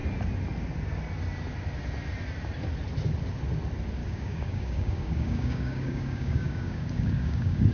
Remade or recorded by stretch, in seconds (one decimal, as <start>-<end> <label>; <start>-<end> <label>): 0.0-4.0 recorded; 4.0-7.7 remade